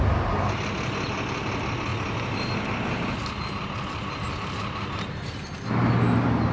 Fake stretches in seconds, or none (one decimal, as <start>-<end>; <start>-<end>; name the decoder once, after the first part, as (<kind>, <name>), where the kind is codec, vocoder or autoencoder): none